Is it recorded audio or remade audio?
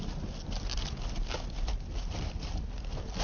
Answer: recorded